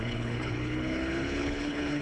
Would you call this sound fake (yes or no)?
yes